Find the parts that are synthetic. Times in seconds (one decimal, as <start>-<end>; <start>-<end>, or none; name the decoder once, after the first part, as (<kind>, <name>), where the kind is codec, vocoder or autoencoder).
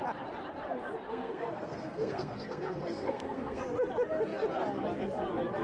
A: 1.1-3.6 (codec, SNAC)